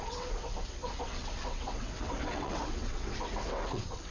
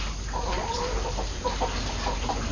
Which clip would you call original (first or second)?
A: second